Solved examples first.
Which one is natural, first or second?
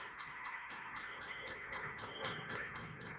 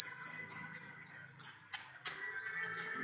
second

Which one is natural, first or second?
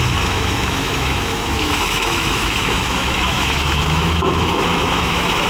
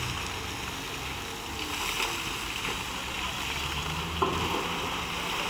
second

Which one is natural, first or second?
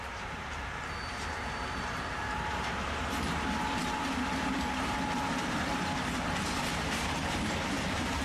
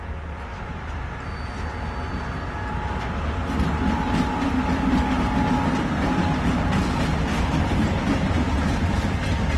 second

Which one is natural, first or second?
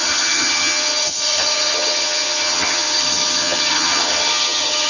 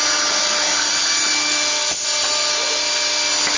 second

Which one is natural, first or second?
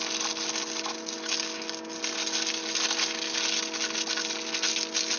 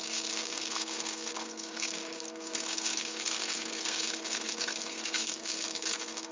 first